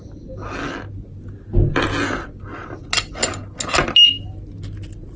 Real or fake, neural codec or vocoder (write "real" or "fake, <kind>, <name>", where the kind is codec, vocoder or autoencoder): real